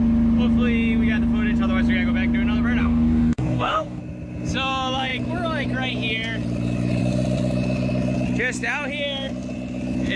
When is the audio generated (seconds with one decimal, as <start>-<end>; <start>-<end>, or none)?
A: 2.8-4.0

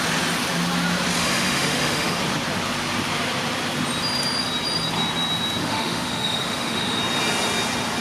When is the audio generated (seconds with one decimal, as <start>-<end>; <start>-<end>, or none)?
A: 1.2-2.2; 5.6-7.0

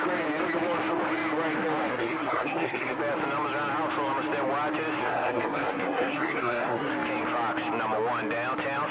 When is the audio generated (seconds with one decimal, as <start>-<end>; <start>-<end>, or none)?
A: 1.9-3.0; 5.0-6.9

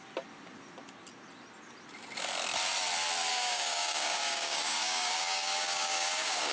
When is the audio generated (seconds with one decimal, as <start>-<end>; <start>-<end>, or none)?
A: 3.3-6.5

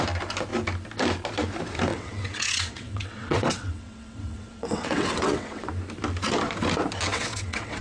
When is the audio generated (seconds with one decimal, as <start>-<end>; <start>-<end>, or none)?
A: 1.9-5.7; 7.1-7.8

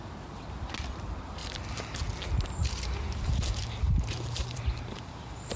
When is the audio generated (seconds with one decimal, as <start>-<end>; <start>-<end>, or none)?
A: 1.4-2.0; 2.6-5.6